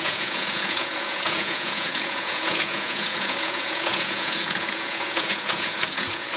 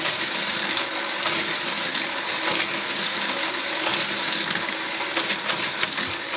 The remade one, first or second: first